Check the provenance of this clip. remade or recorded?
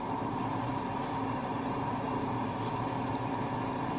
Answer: remade